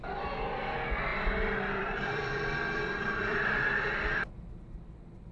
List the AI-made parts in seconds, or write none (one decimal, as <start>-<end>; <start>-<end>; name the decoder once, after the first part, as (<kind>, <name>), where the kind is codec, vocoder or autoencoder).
1.1-4.3 (vocoder, BigVGAN v2)